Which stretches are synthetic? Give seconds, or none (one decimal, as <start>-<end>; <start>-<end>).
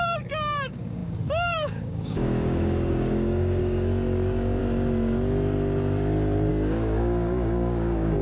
0.0-4.6; 6.5-8.2